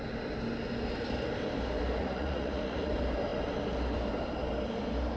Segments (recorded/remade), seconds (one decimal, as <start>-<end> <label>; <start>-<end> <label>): 0.0-2.0 recorded; 2.0-2.9 remade; 2.9-5.2 recorded